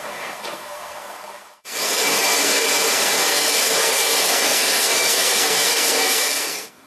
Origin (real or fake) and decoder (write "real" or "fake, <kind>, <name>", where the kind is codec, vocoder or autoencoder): fake, codec, SNAC